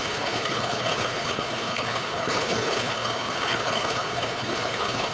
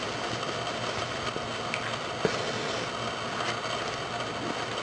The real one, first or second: second